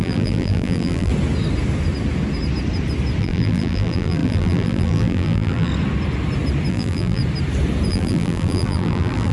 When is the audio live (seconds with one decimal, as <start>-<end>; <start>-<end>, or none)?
1.1-3.2; 5.7-6.7; 7.2-7.9